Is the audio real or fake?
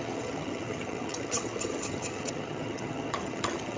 fake